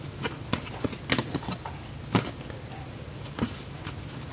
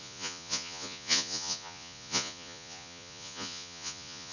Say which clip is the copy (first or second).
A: second